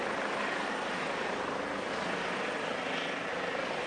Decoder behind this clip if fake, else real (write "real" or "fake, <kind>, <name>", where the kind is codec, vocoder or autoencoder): real